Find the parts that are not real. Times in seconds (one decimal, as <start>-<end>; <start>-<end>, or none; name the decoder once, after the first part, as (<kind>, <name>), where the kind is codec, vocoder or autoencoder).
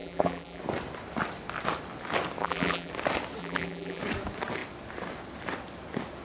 0.0-0.6 (vocoder, BigVGAN v2); 2.4-2.9; 3.4-4.0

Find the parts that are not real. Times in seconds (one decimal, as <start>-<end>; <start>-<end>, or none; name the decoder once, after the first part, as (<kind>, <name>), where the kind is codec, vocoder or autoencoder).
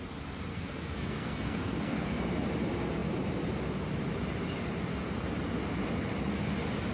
0.5-2.2 (codec, SNAC)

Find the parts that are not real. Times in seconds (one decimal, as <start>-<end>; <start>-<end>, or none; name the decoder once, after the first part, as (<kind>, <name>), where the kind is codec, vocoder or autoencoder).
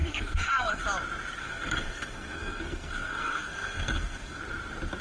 0.0-0.8 (codec, SNAC); 1.4-4.4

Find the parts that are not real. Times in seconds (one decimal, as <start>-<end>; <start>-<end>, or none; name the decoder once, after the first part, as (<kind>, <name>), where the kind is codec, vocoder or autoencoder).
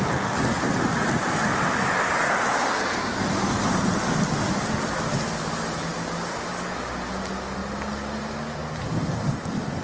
none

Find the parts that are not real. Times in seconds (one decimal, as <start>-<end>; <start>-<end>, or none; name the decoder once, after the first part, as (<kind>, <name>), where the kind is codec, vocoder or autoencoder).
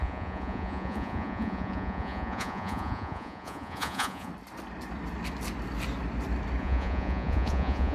0.0-4.3 (vocoder, Vocos); 6.6-7.9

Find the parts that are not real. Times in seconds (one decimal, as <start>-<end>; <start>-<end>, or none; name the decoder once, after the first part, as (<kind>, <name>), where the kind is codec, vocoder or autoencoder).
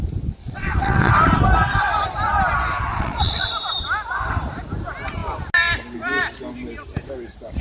0.4-1.1 (vocoder, WaveNeXt); 2.9-3.5